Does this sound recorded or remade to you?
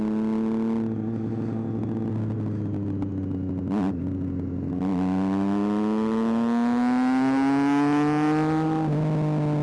recorded